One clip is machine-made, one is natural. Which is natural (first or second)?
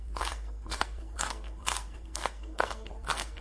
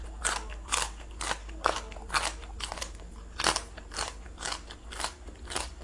second